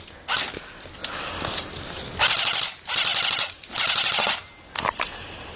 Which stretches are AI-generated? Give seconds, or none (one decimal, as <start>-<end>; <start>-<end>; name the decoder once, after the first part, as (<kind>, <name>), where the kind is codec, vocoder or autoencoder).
none